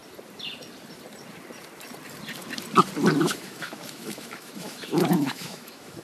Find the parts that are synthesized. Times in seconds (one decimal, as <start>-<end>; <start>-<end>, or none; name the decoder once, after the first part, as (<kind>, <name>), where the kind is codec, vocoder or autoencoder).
3.2-6.0 (autoencoder, DAC-VAE)